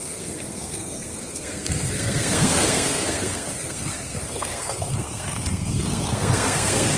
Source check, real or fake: fake